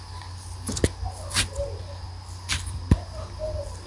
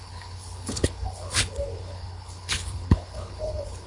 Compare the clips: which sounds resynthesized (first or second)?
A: second